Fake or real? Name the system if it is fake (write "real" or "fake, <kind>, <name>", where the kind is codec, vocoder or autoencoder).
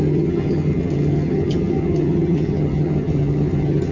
fake, vocoder, HiFi-GAN